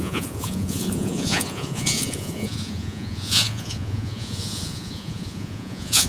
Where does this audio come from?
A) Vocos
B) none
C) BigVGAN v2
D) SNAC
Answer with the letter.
A